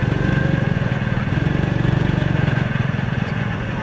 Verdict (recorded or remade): remade